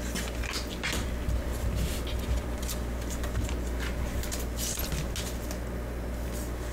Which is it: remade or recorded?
recorded